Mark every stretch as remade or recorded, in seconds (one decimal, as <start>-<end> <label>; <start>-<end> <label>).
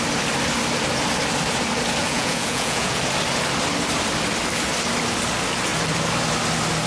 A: 0.0-2.0 recorded; 2.0-3.0 remade; 3.0-6.9 recorded